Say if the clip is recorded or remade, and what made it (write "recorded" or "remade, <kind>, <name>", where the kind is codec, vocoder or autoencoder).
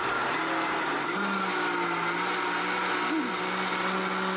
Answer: recorded